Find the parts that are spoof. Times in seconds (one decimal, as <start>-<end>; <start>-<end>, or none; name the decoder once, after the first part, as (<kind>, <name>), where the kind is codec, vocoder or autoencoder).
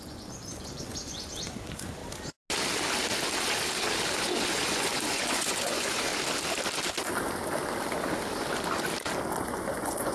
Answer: 0.0-2.0 (vocoder, Vocos); 4.2-6.1; 9.4-10.1